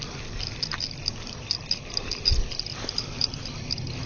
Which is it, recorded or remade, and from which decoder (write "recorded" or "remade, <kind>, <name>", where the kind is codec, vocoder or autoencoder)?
recorded